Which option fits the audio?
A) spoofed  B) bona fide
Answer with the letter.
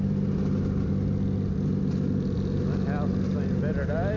B